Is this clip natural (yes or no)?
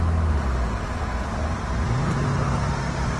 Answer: yes